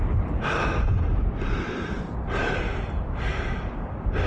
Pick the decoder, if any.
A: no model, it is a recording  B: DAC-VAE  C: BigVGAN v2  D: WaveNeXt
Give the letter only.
C